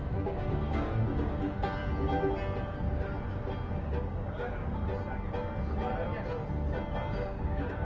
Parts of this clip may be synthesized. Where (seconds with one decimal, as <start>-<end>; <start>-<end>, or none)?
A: 0.0-1.8; 3.8-4.8; 7.1-7.8